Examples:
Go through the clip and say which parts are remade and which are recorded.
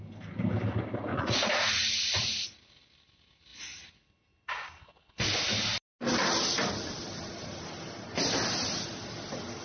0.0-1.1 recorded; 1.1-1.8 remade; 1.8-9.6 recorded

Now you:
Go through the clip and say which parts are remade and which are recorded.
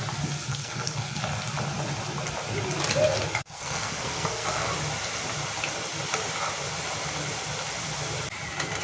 0.0-0.5 recorded; 0.5-1.2 remade; 1.2-3.4 recorded; 3.4-4.7 remade; 4.7-8.8 recorded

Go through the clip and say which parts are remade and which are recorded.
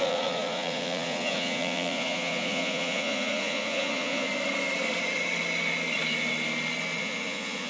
0.0-4.3 remade; 4.3-7.0 recorded; 7.0-7.7 remade